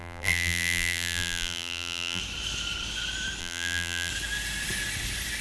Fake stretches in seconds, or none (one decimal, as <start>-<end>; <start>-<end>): 0.0-2.2; 3.4-4.1